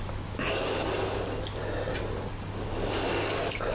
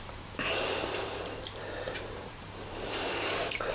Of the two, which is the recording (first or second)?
first